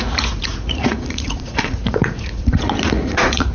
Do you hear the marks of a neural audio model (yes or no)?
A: yes